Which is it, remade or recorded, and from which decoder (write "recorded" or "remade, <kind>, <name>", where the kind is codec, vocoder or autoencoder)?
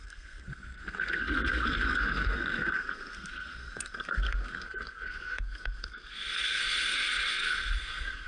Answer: remade, codec, SNAC